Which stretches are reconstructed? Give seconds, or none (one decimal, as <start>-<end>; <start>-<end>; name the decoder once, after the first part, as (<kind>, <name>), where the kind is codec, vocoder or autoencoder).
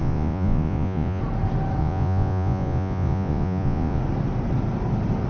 0.0-1.2 (vocoder, Vocos); 1.8-4.0